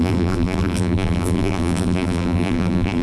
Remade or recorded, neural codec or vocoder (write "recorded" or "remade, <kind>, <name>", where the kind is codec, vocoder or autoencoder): remade, vocoder, BigVGAN v2